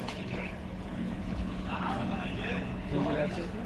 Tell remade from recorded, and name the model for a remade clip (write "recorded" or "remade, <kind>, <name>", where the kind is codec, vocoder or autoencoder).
remade, codec, HILCodec